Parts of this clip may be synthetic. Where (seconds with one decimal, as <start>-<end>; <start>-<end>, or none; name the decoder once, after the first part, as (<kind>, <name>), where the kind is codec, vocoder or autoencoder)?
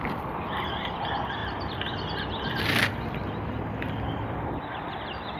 0.0-1.4 (vocoder, BigVGAN v2); 3.9-5.4